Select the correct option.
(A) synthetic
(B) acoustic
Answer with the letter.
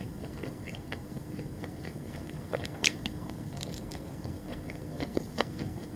A